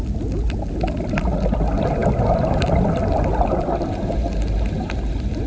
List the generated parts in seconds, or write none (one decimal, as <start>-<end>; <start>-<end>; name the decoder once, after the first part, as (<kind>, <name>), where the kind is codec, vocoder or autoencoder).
none